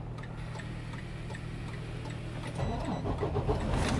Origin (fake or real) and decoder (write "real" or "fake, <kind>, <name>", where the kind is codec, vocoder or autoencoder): real